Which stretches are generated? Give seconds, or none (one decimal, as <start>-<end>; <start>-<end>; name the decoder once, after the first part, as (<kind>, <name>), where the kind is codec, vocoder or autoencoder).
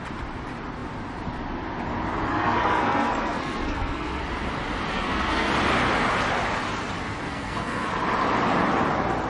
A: 2.3-4.2 (codec, SNAC); 4.9-5.5; 7.0-7.9